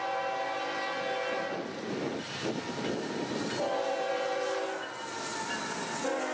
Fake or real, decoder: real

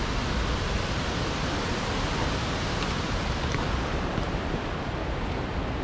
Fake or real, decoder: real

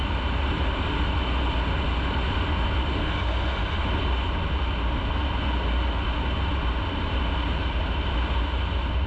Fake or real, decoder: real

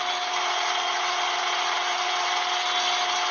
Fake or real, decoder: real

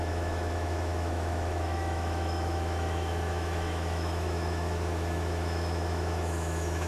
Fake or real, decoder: fake, autoencoder, DAC-VAE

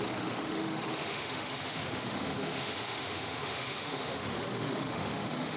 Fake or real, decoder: fake, autoencoder, DAC-VAE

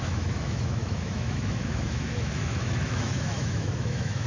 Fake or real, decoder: fake, autoencoder, DAC-VAE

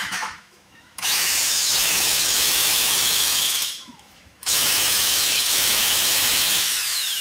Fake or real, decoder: fake, autoencoder, DAC-VAE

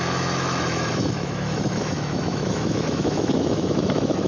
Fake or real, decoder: fake, autoencoder, DAC-VAE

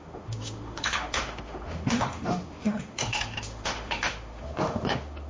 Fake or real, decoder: fake, autoencoder, DAC-VAE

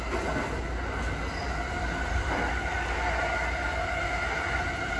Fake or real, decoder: real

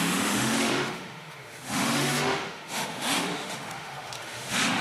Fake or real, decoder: fake, autoencoder, DAC-VAE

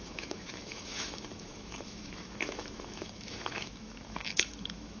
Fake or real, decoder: fake, autoencoder, DAC-VAE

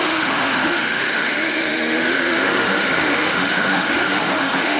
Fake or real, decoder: fake, autoencoder, DAC-VAE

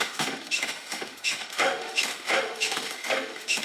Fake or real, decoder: fake, autoencoder, DAC-VAE